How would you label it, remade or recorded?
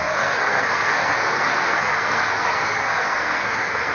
remade